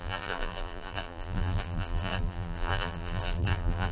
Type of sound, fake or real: fake